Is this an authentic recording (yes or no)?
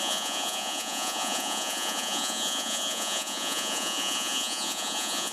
no